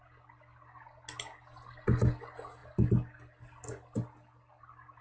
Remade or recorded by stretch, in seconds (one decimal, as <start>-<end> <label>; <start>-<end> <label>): 0.0-5.0 recorded